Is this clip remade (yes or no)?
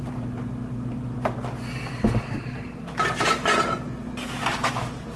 no